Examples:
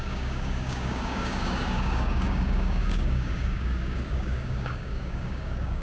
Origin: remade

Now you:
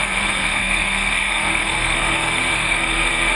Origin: remade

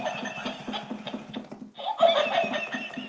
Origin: recorded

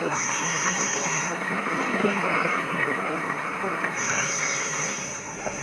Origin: remade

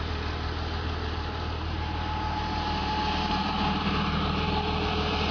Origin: remade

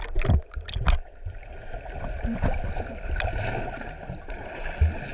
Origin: recorded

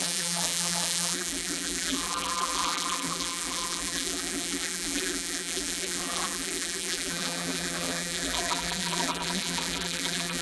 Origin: remade